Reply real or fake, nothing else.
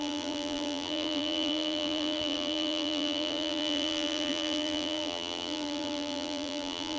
fake